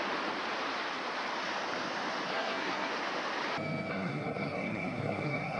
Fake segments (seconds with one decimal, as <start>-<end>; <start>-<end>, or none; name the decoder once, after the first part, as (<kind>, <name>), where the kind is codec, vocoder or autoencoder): 2.3-2.9 (codec, SNAC); 3.9-5.6